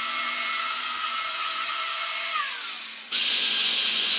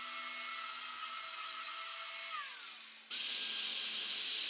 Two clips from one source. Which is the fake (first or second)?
first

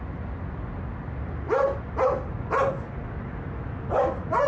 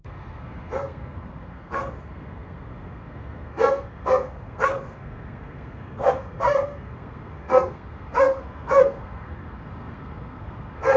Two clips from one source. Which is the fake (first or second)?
second